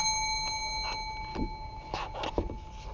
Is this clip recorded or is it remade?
recorded